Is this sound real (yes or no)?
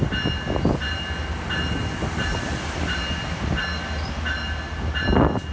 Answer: yes